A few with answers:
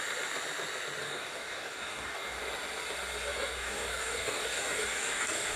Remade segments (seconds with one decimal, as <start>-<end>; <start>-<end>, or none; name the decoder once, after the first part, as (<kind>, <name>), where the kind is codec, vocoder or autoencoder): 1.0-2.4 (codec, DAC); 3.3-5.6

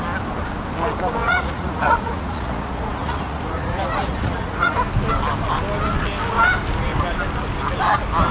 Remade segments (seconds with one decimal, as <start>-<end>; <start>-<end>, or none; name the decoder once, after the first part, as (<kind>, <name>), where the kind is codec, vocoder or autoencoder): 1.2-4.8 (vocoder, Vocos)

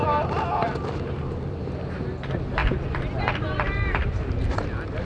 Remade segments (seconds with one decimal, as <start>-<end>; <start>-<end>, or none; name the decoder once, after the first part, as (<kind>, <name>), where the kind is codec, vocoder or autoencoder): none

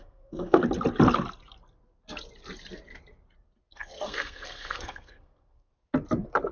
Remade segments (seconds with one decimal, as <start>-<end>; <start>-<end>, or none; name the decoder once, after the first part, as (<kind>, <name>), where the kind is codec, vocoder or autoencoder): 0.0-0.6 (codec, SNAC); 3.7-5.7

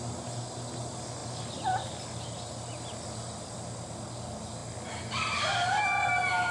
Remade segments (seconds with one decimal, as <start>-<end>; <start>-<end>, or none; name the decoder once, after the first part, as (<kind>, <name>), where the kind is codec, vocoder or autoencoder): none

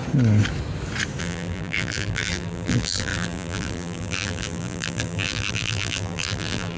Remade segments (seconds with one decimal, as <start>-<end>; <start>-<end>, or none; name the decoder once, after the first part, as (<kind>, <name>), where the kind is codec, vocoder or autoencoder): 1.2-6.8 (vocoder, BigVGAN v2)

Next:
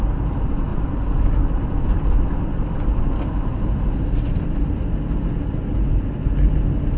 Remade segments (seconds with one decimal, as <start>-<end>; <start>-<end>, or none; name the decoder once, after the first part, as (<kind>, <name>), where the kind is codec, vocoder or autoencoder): none

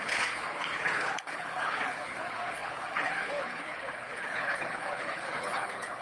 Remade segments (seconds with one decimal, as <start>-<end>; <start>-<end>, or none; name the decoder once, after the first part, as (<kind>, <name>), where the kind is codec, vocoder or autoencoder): 0.0-6.0 (codec, HILCodec)